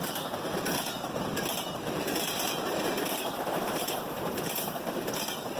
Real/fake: real